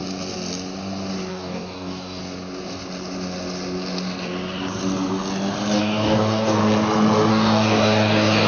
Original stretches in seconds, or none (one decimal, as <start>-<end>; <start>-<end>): 0.0-1.3; 2.2-5.8; 6.6-7.3